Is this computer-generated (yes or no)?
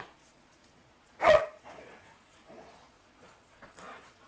yes